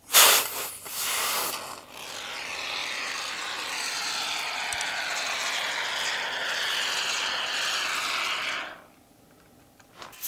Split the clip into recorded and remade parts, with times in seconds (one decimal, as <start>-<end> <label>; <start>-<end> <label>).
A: 0.0-2.8 recorded; 2.8-7.8 remade; 7.8-10.3 recorded